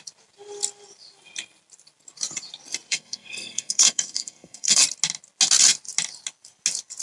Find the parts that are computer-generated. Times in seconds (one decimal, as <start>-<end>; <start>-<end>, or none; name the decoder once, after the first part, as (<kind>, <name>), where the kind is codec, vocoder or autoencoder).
2.9-4.8 (codec, SNAC)